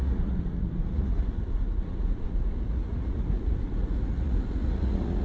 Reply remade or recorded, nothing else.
remade